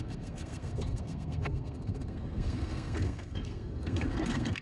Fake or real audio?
fake